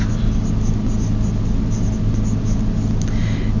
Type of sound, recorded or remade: recorded